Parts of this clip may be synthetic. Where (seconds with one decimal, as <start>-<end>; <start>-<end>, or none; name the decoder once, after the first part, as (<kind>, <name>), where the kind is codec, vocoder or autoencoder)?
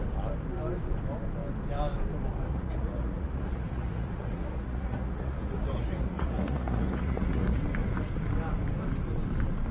2.5-7.6 (vocoder, Vocos)